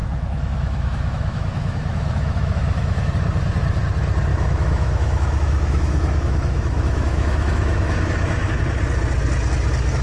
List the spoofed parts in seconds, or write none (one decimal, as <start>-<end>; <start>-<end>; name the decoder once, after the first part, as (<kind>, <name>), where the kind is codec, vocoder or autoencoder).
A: 0.0-3.1 (autoencoder, DAC-VAE); 4.3-8.5